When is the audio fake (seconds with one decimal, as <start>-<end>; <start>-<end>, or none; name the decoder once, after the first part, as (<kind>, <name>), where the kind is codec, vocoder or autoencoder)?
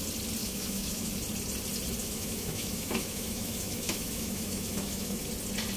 0.4-1.1 (autoencoder, DAC-VAE); 2.0-5.3